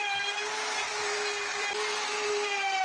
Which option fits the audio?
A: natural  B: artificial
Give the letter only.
B